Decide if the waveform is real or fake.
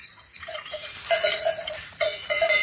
fake